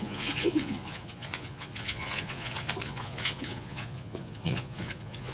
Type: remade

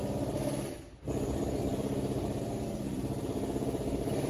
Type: remade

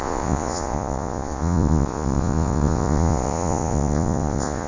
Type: remade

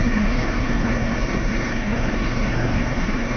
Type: remade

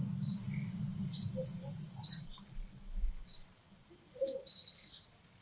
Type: recorded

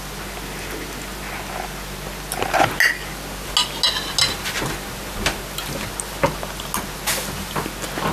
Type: recorded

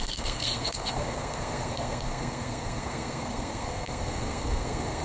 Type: remade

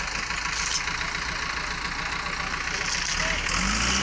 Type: recorded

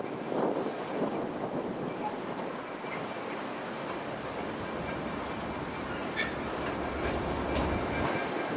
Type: recorded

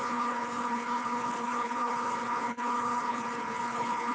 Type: remade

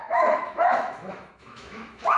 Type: remade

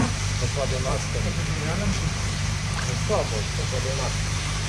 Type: remade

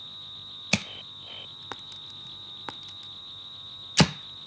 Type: recorded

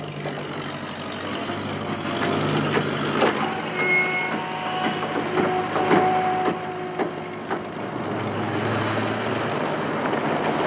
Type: recorded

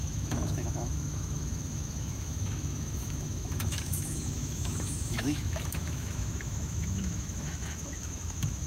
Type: remade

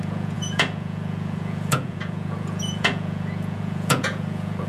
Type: remade